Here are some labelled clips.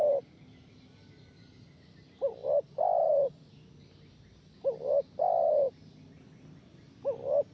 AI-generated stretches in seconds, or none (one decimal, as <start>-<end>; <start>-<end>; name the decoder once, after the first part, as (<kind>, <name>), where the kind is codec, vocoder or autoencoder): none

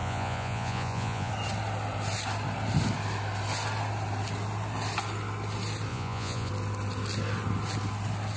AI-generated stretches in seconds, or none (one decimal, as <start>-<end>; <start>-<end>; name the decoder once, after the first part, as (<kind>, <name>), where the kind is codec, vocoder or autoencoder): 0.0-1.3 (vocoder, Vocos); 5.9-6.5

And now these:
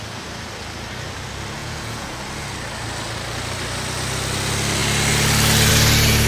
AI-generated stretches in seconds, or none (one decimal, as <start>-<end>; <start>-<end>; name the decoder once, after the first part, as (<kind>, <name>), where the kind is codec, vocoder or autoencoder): 1.6-2.1 (vocoder, Vocos)